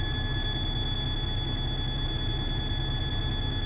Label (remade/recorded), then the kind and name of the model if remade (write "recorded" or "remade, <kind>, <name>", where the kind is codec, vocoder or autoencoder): recorded